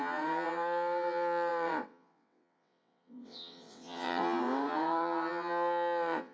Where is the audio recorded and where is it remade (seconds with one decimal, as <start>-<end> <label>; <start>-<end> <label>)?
0.0-6.3 remade